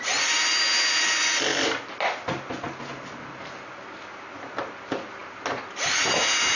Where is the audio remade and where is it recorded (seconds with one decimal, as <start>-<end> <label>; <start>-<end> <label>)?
0.0-6.6 recorded